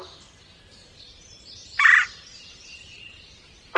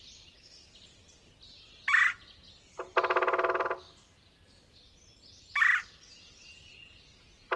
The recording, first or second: second